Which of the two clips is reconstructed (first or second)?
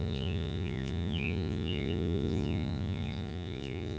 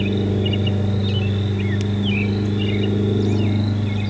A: first